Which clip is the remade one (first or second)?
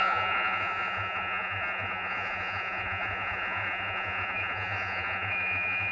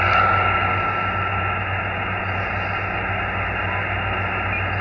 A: first